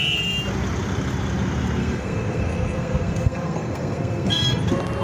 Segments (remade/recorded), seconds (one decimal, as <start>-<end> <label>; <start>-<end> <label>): 0.0-1.8 recorded; 1.8-4.6 remade; 4.6-5.0 recorded